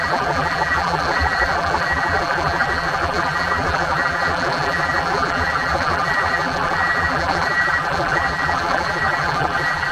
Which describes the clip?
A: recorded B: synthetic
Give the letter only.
B